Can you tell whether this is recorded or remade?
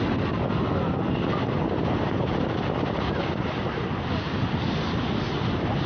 recorded